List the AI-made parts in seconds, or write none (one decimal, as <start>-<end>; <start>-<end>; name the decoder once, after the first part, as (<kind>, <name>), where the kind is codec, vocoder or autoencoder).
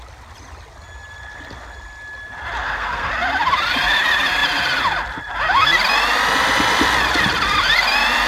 2.6-3.1 (codec, SNAC)